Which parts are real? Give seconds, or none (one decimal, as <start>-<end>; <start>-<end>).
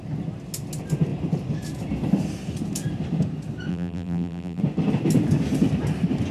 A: 0.0-3.7; 4.6-6.3